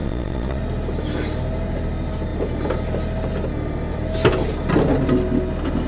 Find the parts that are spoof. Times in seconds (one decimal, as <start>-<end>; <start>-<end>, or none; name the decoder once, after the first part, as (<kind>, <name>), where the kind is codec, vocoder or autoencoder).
0.0-0.6 (vocoder, Vocos)